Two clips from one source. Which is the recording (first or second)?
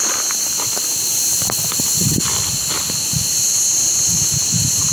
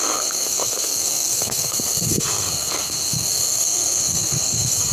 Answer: first